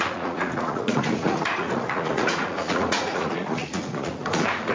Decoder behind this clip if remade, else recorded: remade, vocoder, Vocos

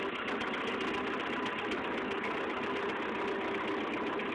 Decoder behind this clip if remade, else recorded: recorded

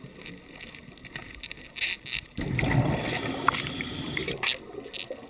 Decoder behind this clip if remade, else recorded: recorded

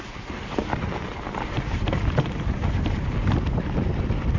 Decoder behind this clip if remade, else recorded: recorded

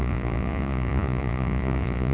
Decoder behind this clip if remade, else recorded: remade, vocoder, Vocos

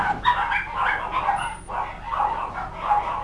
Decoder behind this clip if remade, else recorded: recorded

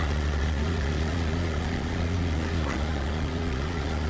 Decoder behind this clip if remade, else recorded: remade, vocoder, Vocos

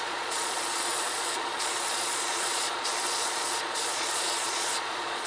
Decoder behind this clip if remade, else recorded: remade, vocoder, Vocos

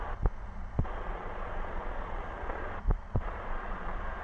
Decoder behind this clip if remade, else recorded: remade, vocoder, Vocos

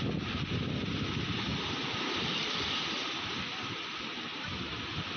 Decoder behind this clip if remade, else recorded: recorded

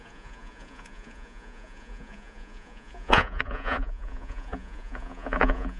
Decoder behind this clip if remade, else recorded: remade, vocoder, Vocos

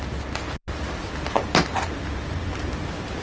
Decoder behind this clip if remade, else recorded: recorded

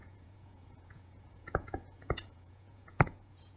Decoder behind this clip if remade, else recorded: remade, vocoder, Vocos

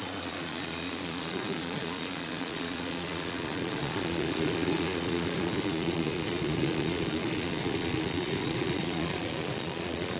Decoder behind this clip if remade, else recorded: remade, vocoder, Vocos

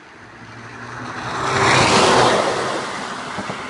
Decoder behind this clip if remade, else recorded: recorded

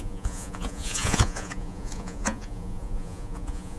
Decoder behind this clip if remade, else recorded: remade, vocoder, Vocos